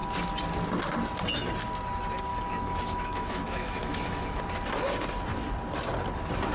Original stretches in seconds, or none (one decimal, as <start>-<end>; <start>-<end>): 0.0-2.3; 4.4-6.5